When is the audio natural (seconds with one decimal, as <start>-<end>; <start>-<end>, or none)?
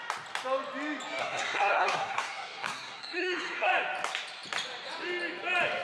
0.0-1.2; 3.7-5.8